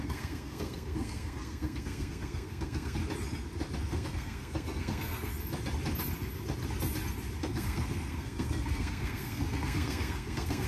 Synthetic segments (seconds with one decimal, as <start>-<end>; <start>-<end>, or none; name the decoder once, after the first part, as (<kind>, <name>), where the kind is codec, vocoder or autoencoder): 0.0-3.0 (codec, SNAC); 3.8-5.3; 7.4-10.7